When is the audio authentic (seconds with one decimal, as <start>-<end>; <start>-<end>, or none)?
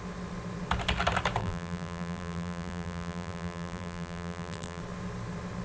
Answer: 0.0-1.4; 4.8-5.6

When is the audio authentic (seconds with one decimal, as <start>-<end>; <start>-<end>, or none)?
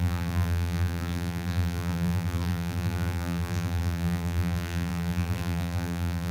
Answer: none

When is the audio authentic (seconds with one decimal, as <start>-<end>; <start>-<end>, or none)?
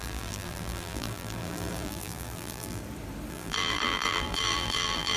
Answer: 2.8-3.3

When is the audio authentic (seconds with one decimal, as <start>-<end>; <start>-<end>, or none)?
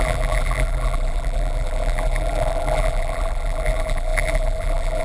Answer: none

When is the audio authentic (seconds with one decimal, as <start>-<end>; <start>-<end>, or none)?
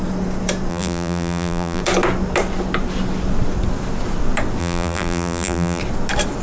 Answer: 0.0-0.7; 1.8-4.6; 5.8-6.4